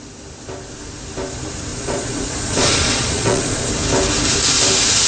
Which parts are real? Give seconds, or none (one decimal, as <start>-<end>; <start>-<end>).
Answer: 0.0-1.7; 3.7-5.1